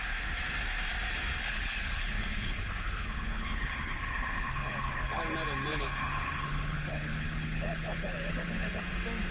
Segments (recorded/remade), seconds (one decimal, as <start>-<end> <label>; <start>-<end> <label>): 0.0-1.4 recorded; 1.4-5.2 remade; 5.2-5.7 recorded; 5.7-8.8 remade; 8.8-9.3 recorded